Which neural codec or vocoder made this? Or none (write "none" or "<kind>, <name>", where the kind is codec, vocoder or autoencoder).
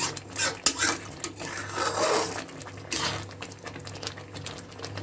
none